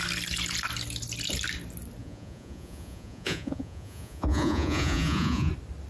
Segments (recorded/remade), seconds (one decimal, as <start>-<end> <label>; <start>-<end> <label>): 0.0-2.0 recorded; 2.0-5.5 remade; 5.5-5.9 recorded